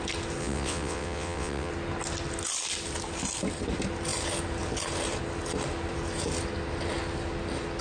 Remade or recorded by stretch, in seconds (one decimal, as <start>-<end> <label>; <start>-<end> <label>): 0.0-0.4 recorded; 0.4-1.7 remade; 1.7-7.8 recorded